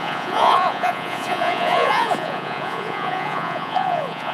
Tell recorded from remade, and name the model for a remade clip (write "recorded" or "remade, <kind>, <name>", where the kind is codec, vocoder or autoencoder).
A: remade, vocoder, Vocos